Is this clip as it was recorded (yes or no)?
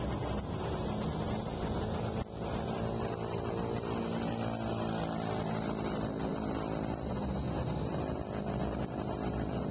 yes